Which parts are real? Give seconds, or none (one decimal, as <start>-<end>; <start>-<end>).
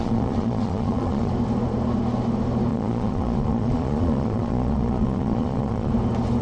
1.3-2.7; 5.9-6.4